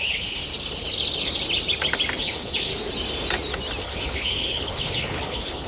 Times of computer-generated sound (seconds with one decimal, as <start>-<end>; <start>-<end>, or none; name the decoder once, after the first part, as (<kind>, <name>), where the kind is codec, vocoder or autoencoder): 0.0-0.4 (codec, HILCodec); 2.2-2.7; 3.8-5.7